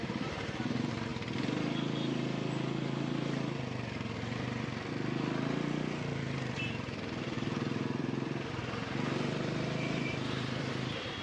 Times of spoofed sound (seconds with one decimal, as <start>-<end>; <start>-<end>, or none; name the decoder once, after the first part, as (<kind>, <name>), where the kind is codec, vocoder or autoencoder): 0.0-1.1 (vocoder, BigVGAN v2); 4.9-8.6; 9.3-11.2